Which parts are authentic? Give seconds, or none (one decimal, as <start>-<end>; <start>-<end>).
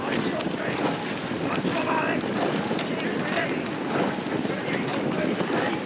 0.0-5.9